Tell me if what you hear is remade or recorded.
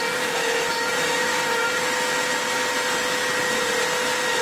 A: recorded